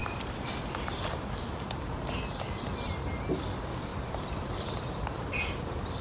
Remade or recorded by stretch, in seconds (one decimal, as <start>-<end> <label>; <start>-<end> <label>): 0.0-2.0 remade; 2.0-3.9 recorded; 3.9-6.0 remade